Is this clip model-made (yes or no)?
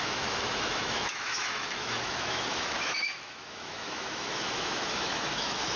yes